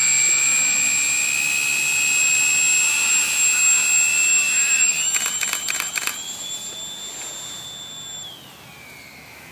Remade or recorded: recorded